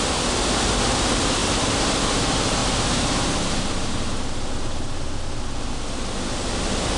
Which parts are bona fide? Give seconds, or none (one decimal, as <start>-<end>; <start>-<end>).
2.6-6.6